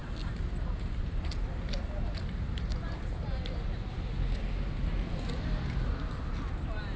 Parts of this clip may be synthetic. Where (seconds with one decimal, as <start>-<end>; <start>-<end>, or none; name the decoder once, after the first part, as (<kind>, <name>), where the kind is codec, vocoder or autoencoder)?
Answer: none